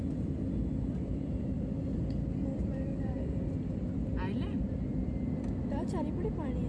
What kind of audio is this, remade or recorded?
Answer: remade